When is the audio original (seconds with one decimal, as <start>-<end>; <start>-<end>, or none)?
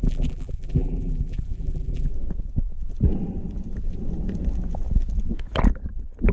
2.1-6.3